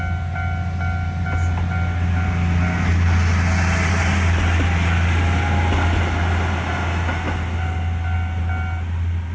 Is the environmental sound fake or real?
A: real